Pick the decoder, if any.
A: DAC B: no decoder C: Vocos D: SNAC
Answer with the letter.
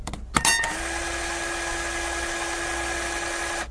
B